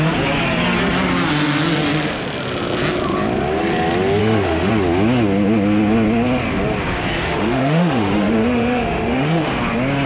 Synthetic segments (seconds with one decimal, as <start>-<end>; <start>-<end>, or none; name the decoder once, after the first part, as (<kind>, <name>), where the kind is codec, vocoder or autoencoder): 4.2-4.7 (autoencoder, DAC-VAE); 7.2-9.6